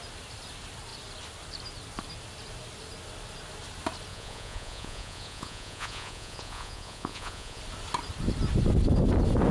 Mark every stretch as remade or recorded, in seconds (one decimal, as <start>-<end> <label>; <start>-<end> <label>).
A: 0.0-4.1 recorded; 4.1-7.6 remade; 7.6-9.5 recorded